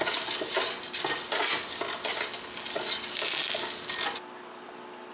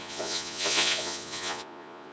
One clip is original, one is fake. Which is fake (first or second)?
second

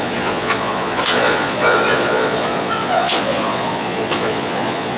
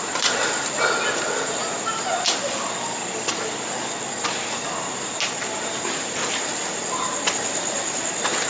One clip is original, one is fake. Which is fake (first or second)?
first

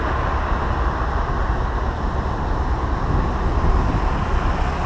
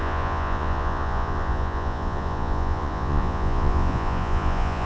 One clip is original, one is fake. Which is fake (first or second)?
second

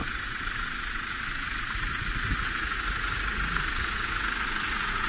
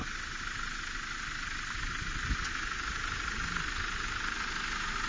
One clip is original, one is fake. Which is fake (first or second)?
first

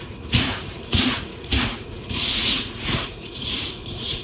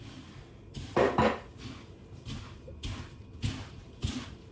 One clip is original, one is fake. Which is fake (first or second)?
first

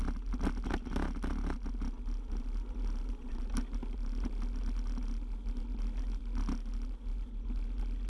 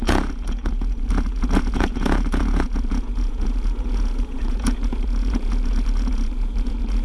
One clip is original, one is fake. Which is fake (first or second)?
second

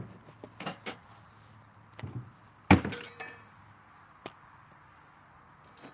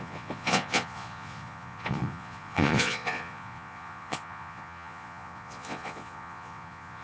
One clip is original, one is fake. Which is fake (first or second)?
second